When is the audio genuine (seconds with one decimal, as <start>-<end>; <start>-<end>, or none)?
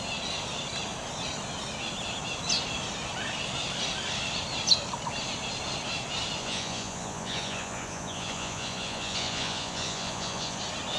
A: 0.0-6.4; 10.6-11.0